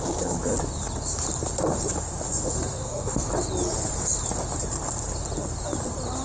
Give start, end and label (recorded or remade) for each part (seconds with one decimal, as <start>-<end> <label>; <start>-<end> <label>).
0.0-2.7 recorded; 2.7-3.3 remade; 3.3-6.2 recorded